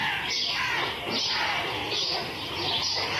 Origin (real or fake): real